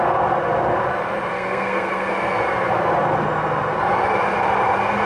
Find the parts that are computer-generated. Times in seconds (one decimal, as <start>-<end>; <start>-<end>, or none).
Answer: 1.3-2.1